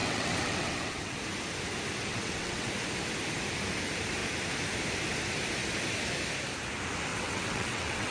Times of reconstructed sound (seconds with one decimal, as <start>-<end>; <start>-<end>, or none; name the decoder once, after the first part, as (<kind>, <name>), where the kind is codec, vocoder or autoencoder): 0.0-1.2 (vocoder, WaveNeXt); 2.1-2.7; 7.1-8.1

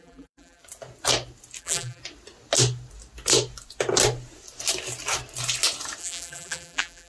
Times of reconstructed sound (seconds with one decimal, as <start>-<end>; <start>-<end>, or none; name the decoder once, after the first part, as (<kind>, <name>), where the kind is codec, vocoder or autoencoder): 0.0-0.6 (vocoder, BigVGAN v2); 1.6-2.0; 6.0-7.1

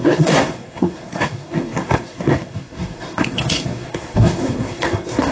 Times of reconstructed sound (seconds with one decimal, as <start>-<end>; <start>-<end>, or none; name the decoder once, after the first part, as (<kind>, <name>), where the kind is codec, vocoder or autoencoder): 0.0-5.3 (codec, SNAC)

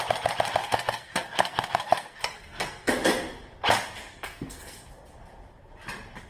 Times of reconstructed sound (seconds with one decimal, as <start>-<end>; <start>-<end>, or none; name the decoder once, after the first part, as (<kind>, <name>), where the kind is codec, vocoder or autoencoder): 0.6-2.9 (codec, SNAC); 4.1-4.9

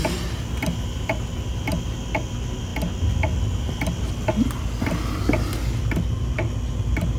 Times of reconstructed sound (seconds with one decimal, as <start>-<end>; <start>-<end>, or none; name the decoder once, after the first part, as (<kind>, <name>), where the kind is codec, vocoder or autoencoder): none

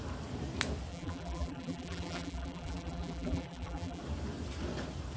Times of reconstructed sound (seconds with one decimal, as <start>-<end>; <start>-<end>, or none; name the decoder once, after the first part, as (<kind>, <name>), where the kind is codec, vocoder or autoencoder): 0.9-4.0 (vocoder, BigVGAN v2)

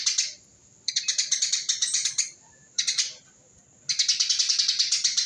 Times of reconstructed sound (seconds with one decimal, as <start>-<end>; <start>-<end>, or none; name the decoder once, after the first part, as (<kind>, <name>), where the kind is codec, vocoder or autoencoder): 0.5-3.6 (vocoder, BigVGAN v2)